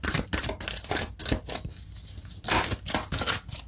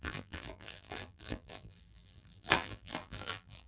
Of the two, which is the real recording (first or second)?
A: first